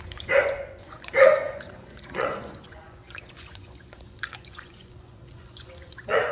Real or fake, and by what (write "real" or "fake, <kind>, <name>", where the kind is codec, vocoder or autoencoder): fake, vocoder, Vocos